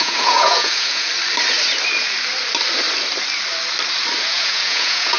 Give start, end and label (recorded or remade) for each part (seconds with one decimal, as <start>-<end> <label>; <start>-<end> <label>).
0.0-1.1 remade; 1.1-4.2 recorded; 4.2-5.2 remade

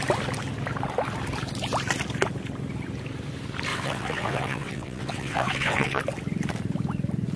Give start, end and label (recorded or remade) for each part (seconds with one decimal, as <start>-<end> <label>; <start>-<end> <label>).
0.0-3.7 recorded; 3.7-6.0 remade; 6.0-7.4 recorded